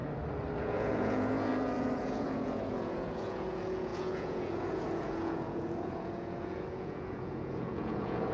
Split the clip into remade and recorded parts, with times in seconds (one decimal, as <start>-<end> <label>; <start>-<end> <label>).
0.0-0.6 recorded; 0.6-1.5 remade; 1.5-2.0 recorded; 2.0-8.3 remade